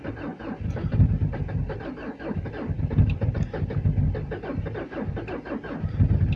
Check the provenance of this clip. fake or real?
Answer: real